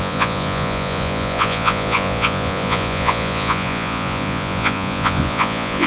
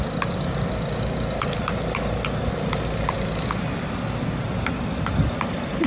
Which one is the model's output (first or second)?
first